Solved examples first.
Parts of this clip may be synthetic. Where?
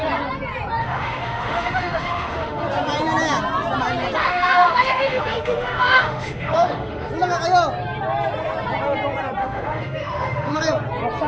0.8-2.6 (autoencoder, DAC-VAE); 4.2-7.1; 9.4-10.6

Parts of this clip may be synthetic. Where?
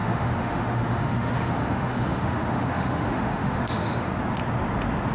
0.0-4.1 (autoencoder, DAC-VAE)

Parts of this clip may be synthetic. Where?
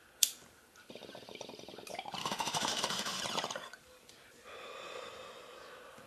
2.2-3.2 (autoencoder, DAC-VAE)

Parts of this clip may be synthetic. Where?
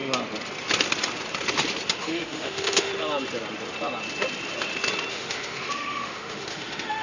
2.0-2.9 (autoencoder, DAC-VAE); 5.1-7.0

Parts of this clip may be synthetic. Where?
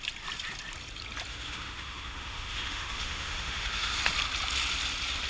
1.3-4.0 (autoencoder, DAC-VAE)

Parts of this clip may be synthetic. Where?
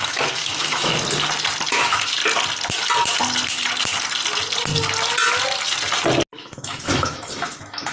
0.0-0.9 (autoencoder, DAC-VAE); 1.7-2.2; 6.3-7.9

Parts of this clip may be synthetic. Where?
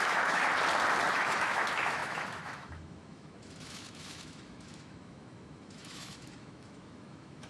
0.0-0.5 (autoencoder, DAC-VAE); 1.1-7.5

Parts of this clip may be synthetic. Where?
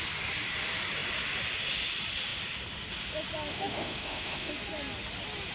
3.5-4.5 (autoencoder, DAC-VAE)